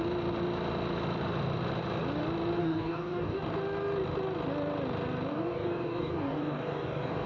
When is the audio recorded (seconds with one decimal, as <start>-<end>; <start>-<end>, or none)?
0.0-2.6; 3.4-5.3